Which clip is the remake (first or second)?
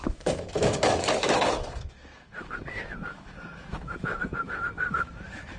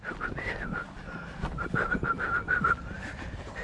first